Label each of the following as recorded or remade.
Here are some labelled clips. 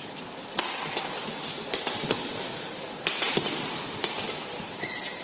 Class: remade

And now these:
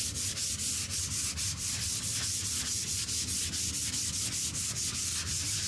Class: recorded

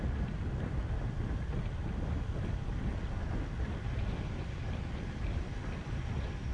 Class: recorded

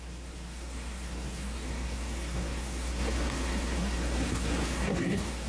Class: remade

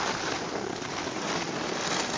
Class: recorded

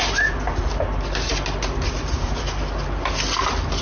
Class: recorded